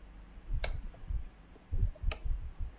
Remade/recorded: recorded